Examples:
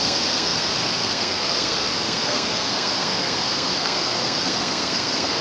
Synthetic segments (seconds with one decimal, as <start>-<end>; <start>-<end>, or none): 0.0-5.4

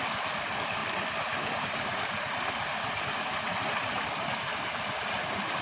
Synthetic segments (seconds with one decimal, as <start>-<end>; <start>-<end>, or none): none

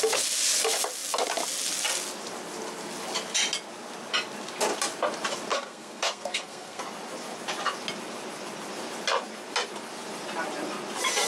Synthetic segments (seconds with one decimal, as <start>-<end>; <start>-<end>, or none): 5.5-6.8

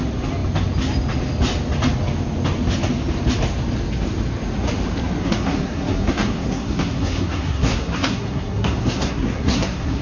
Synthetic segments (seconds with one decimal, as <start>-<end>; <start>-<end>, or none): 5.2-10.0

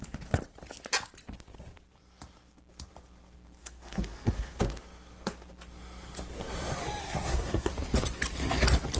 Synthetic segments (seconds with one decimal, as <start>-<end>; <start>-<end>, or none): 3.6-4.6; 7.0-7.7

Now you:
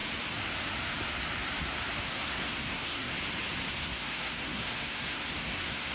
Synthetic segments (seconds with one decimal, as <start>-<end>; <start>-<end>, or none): 2.0-3.1; 3.7-5.9